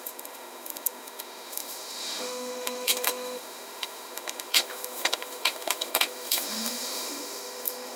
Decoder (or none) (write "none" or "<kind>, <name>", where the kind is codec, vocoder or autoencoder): autoencoder, DAC-VAE